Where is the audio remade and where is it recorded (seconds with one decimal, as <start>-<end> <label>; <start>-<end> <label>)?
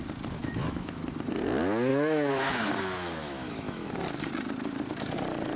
0.0-0.4 recorded; 0.4-1.0 remade; 1.0-1.9 recorded; 1.9-2.7 remade; 2.7-3.2 recorded; 3.2-3.9 remade; 3.9-5.6 recorded